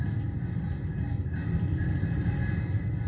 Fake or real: real